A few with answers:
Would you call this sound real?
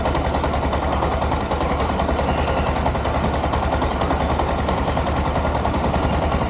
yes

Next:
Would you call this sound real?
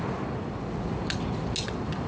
yes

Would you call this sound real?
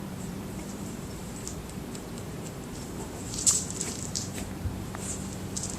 no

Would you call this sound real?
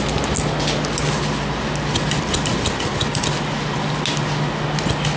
yes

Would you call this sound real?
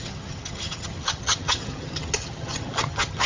no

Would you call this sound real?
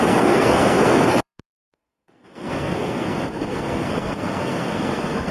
no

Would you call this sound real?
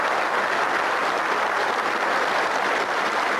yes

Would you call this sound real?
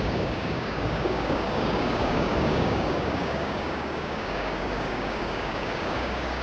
no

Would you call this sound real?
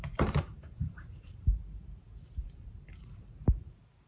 no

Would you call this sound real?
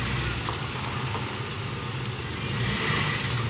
yes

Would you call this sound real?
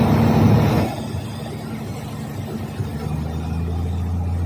yes